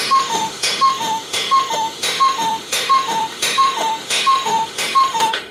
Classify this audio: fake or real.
fake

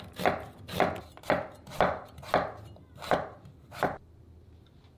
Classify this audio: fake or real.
real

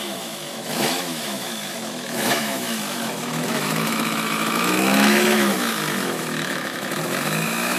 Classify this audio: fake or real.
fake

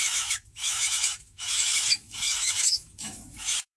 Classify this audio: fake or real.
fake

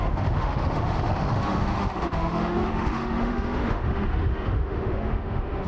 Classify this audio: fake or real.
fake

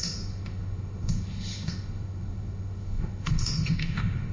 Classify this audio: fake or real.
fake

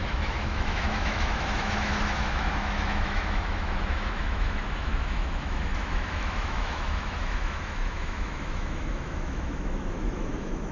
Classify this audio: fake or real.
fake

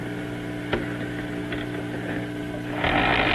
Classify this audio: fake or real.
real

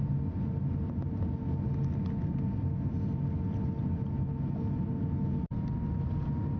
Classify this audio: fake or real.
real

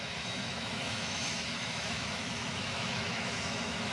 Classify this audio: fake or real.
fake